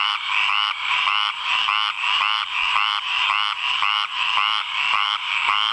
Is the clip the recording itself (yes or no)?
no